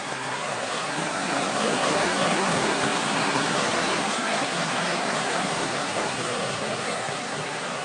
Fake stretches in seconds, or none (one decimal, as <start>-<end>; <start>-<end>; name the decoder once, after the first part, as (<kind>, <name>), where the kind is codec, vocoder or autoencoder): 0.0-7.8 (codec, SNAC)